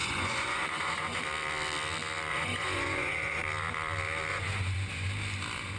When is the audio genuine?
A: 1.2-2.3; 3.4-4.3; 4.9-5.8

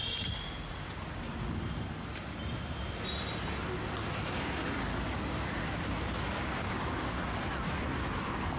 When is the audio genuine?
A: 0.0-8.6